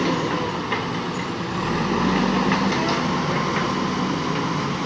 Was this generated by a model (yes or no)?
no